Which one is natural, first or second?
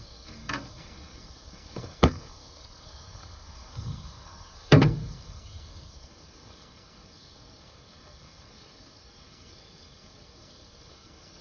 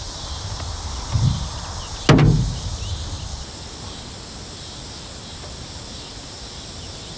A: second